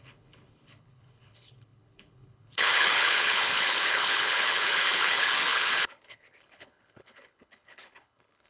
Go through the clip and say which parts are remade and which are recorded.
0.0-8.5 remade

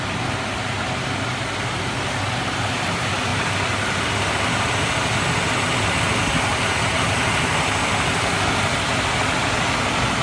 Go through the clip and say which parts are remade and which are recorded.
0.0-10.2 recorded

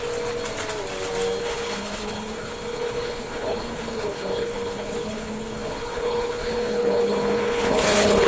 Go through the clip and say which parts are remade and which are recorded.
0.0-1.4 recorded; 1.4-8.3 remade